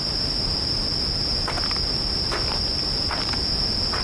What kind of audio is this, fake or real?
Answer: real